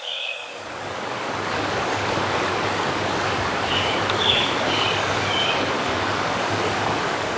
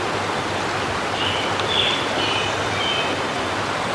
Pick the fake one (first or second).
first